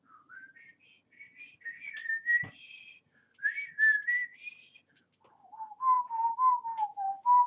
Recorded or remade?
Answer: recorded